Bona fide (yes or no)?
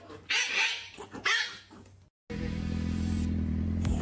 yes